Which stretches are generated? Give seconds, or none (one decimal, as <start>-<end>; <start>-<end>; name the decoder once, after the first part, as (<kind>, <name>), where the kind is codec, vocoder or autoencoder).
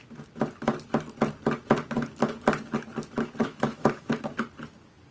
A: 3.4-4.1 (autoencoder, DAC-VAE)